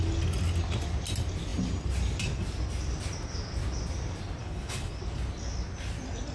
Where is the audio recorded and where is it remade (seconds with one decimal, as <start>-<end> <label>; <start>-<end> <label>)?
0.0-4.4 recorded; 4.4-5.0 remade; 5.0-6.3 recorded